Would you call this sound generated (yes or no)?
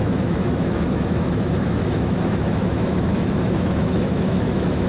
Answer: yes